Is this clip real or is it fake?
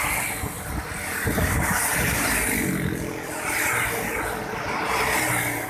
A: real